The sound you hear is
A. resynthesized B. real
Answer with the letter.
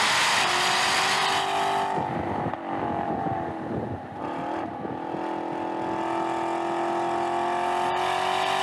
B